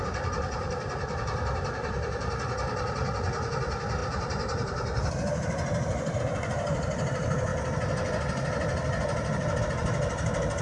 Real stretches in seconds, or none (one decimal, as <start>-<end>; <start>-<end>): 7.5-9.6